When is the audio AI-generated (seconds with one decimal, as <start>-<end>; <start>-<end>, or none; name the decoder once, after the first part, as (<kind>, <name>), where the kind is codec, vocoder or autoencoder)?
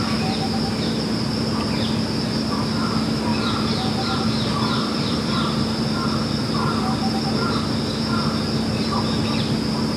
3.3-4.2 (vocoder, BigVGAN v2); 4.8-6.5